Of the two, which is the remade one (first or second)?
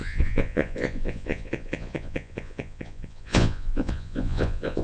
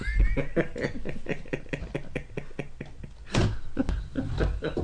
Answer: first